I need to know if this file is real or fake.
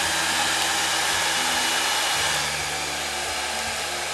real